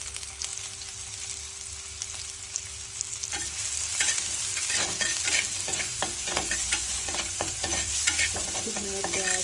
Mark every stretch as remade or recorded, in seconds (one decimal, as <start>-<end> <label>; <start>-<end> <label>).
0.0-5.7 recorded; 5.7-9.0 remade; 9.0-9.4 recorded